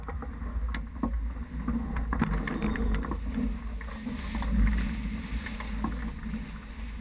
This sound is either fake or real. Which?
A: real